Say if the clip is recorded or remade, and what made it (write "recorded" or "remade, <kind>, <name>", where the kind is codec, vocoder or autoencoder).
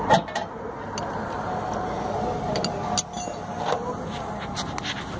recorded